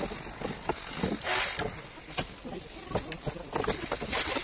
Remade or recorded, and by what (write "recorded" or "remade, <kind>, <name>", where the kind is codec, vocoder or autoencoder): recorded